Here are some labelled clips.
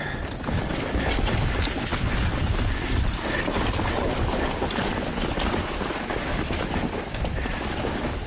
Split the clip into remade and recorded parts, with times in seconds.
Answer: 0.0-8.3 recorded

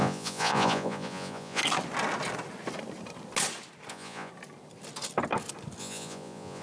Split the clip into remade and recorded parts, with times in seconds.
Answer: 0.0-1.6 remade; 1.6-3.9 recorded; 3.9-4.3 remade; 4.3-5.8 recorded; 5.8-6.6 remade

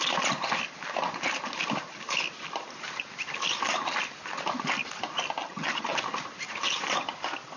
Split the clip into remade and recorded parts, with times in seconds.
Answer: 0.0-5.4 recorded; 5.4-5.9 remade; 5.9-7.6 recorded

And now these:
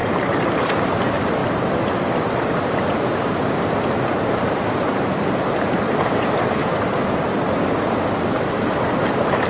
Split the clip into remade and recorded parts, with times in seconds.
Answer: 0.0-1.4 remade; 1.4-3.5 recorded; 3.5-6.6 remade; 6.6-9.0 recorded; 9.0-9.5 remade

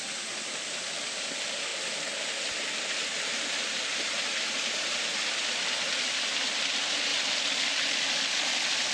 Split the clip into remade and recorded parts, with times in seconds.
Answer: 0.0-8.9 recorded